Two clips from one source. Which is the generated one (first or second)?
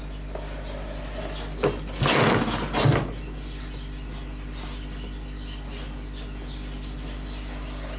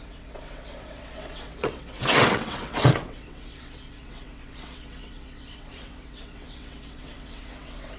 second